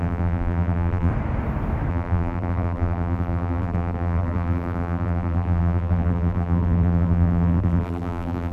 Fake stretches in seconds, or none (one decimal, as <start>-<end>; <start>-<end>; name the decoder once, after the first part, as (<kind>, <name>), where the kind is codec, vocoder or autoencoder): 0.0-1.1 (vocoder, BigVGAN v2); 1.9-8.5